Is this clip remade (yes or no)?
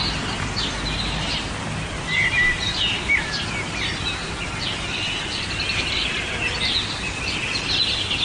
no